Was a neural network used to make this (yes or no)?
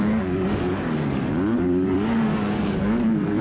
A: yes